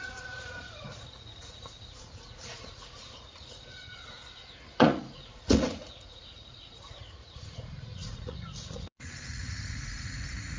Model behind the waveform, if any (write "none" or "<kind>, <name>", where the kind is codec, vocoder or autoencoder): vocoder, Vocos